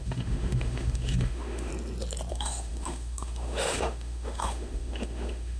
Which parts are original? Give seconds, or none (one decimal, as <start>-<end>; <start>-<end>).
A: 1.7-2.3